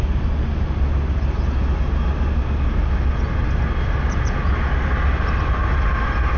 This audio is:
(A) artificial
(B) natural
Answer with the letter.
B